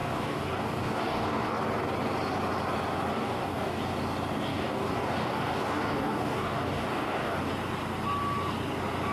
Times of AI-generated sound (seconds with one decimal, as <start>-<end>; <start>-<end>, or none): 0.0-1.5; 3.1-3.8; 4.5-7.5